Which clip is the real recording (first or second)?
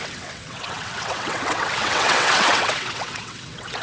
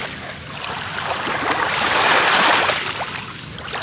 second